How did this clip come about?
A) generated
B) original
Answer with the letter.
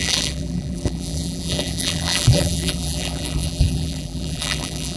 A